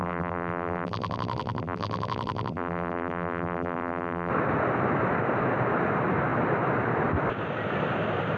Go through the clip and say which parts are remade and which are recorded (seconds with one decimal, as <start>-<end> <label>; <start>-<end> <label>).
0.0-4.3 remade; 4.3-8.4 recorded